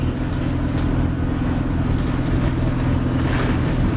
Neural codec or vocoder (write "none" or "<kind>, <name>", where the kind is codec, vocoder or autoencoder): none